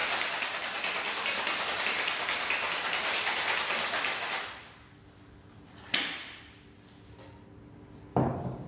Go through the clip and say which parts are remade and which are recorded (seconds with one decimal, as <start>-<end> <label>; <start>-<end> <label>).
0.0-8.1 recorded; 8.1-8.7 remade